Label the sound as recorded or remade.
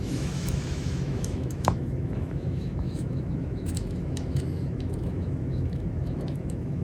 remade